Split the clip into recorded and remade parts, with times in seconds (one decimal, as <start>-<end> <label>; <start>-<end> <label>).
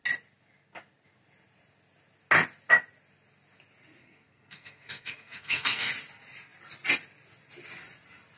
0.0-4.0 recorded; 4.0-5.9 remade; 5.9-8.4 recorded